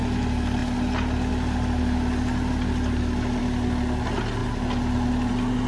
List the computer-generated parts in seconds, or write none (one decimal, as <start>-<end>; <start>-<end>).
none